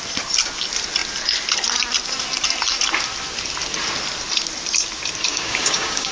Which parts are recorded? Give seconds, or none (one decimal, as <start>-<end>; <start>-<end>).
0.0-5.3